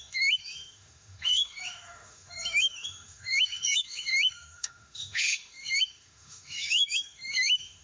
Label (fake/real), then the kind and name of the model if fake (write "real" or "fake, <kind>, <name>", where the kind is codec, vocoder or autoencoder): fake, autoencoder, DAC-VAE